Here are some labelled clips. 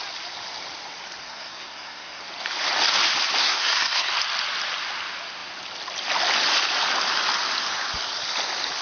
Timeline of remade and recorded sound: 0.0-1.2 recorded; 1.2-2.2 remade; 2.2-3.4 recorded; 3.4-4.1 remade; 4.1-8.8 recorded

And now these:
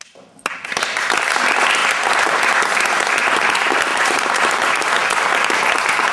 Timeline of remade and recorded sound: 0.0-3.9 recorded; 3.9-4.9 remade; 4.9-6.1 recorded

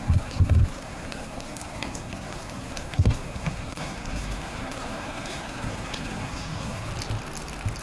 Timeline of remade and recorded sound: 0.0-6.9 remade; 6.9-7.8 recorded

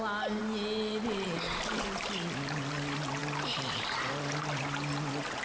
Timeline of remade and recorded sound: 0.0-5.4 recorded